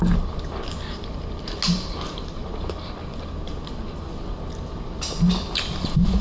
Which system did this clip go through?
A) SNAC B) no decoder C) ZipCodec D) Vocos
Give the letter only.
B